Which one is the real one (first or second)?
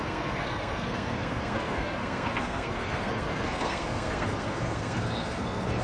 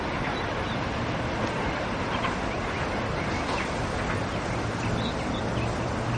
second